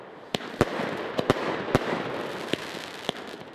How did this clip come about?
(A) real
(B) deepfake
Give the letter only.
A